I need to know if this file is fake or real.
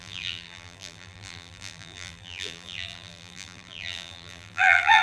fake